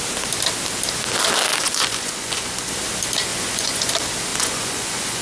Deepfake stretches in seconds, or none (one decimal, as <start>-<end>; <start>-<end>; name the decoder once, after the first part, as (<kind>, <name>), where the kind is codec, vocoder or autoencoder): 1.5-2.7 (vocoder, Vocos); 3.3-3.9; 4.3-5.2